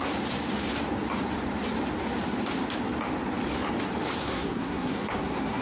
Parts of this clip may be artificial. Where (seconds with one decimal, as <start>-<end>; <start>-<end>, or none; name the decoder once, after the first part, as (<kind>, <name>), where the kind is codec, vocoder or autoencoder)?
4.2-5.6 (codec, SNAC)